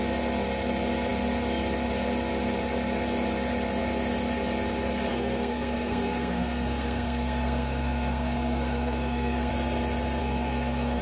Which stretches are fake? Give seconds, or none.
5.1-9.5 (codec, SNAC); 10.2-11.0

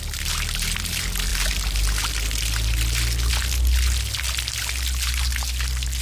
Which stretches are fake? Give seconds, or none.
none

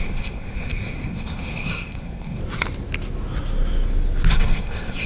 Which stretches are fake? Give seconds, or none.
0.0-2.4 (codec, SNAC); 4.3-5.1